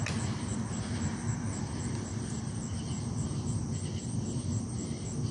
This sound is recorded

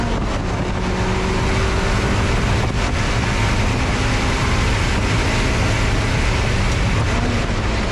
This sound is recorded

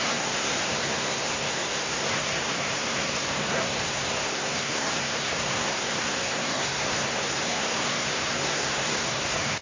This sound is remade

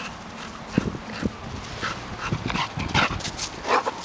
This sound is recorded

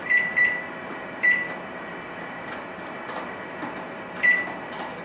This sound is recorded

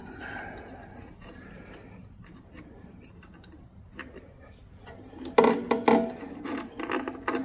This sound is recorded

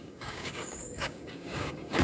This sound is remade